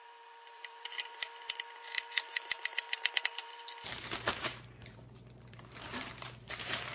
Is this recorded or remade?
remade